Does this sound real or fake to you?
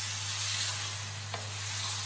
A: real